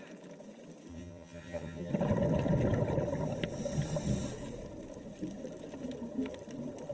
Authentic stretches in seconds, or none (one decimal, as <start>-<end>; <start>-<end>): 0.0-0.9; 1.9-6.9